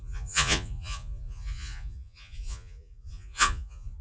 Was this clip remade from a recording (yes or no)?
yes